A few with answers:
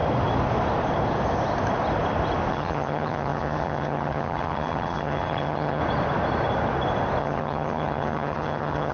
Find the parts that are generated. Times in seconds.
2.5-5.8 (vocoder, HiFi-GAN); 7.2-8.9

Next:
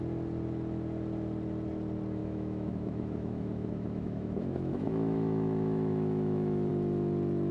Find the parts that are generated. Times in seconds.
2.2-6.7 (autoencoder, DAC-VAE)

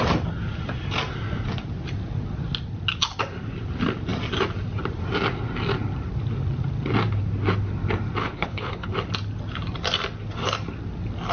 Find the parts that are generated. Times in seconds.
8.2-8.9 (codec, HILCodec)

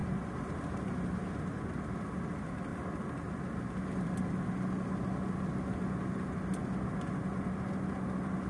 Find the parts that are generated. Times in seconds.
0.0-1.3 (vocoder, BigVGAN v2)

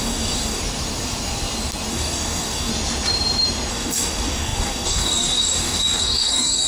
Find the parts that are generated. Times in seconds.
0.0-0.6 (codec, DAC); 1.9-2.7; 3.7-6.7

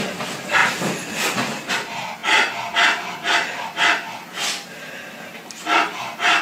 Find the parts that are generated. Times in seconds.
none

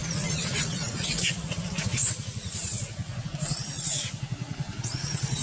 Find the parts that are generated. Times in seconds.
0.0-5.4 (vocoder, Vocos)